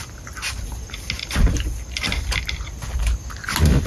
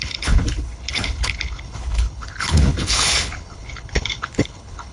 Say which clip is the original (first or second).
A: first